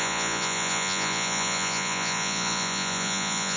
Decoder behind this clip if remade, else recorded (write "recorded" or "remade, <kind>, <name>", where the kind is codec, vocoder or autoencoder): remade, vocoder, Vocos